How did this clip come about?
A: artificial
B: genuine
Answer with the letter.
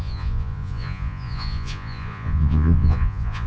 A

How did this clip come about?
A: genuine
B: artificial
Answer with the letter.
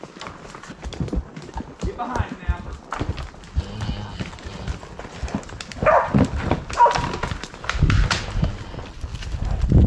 A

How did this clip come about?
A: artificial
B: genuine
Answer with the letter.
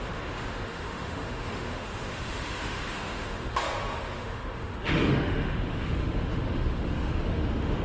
A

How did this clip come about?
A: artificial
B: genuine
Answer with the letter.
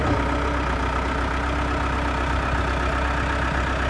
B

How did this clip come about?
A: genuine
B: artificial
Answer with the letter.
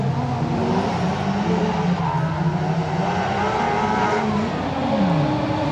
A